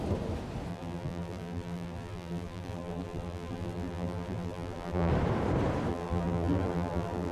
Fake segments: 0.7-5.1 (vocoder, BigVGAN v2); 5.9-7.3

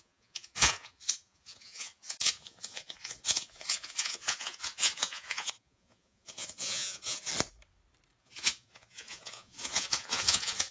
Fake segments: 0.0-7.3 (vocoder, Vocos); 8.2-10.7

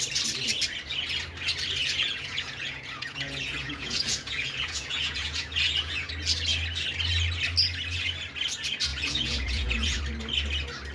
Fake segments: 1.8-6.1 (vocoder, Vocos); 8.9-10.0

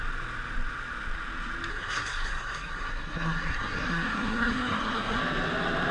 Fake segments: 1.7-5.2 (codec, SNAC)

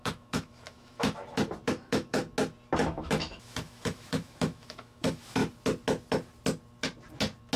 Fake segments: 0.0-1.2 (autoencoder, DAC-VAE); 1.7-2.2; 2.8-5.4

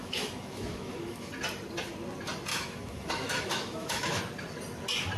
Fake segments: 0.0-1.3 (autoencoder, DAC-VAE); 2.5-4.2

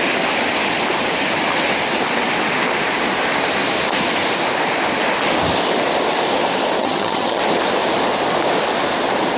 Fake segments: 6.8-7.4 (vocoder, HiFi-GAN)